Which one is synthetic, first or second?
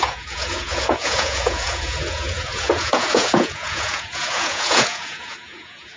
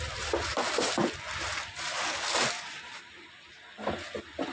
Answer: first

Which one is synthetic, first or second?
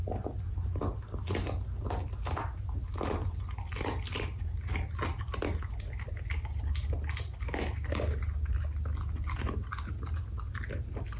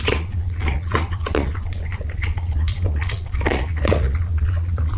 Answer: second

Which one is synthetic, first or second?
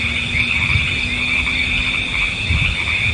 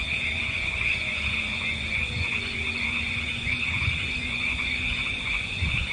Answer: second